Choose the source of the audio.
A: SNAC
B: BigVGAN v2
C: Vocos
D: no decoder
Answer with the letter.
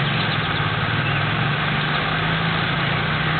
D